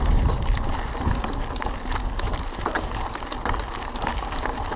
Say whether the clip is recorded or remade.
remade